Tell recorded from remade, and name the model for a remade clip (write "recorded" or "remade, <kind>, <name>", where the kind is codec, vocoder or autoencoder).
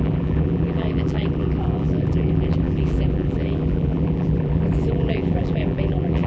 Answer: remade, vocoder, BigVGAN v2